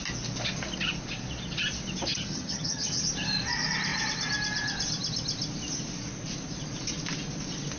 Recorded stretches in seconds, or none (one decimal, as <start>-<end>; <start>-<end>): 0.0-2.1; 2.9-7.8